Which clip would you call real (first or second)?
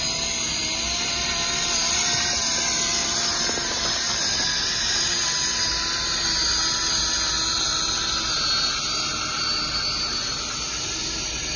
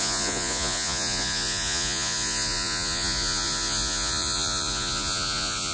first